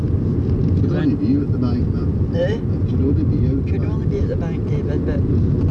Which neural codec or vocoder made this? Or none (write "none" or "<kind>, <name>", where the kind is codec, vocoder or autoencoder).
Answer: none